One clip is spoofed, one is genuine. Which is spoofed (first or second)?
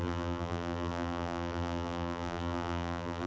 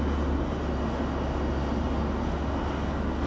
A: first